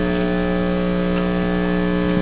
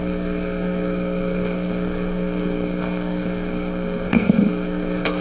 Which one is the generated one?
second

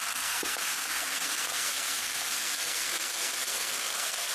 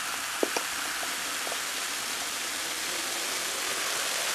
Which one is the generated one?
first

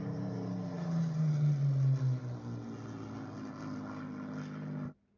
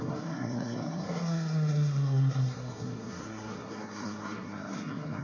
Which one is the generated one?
second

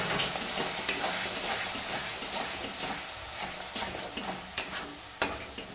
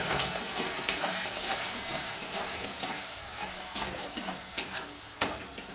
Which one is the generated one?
second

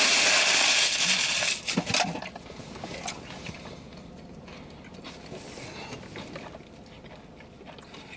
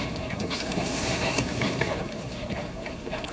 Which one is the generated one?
second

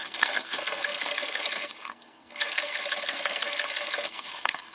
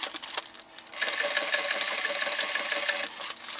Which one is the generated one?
first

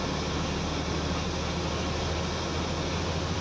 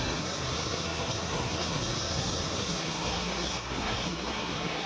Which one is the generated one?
second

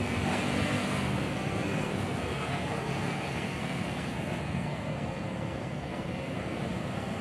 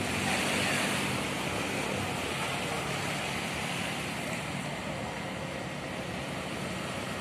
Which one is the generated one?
first